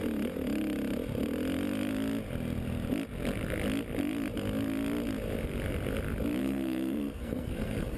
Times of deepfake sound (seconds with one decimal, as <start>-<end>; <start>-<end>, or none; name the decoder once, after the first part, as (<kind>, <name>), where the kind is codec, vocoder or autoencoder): 6.4-8.0 (codec, SNAC)